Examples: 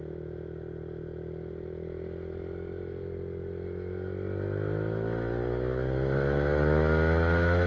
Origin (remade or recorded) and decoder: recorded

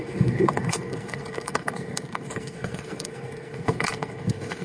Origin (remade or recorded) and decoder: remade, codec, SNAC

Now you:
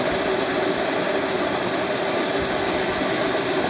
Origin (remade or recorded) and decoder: recorded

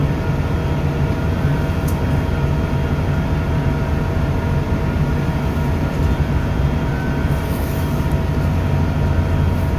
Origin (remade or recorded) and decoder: recorded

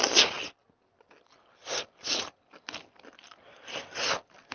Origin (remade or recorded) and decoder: recorded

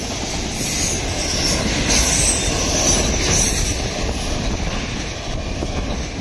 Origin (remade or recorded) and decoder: recorded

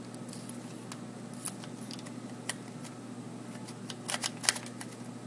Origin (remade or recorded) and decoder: recorded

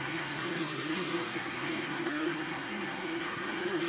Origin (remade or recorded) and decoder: remade, codec, SNAC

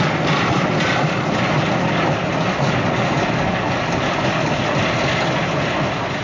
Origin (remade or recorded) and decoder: recorded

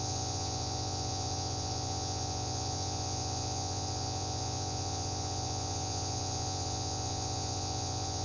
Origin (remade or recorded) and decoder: remade, vocoder, Vocos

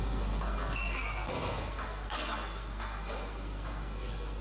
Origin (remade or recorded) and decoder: remade, codec, SNAC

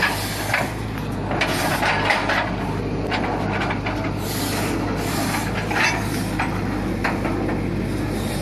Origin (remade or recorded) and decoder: recorded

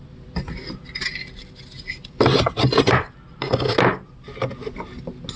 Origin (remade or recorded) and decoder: recorded